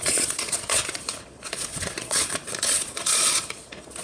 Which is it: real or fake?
fake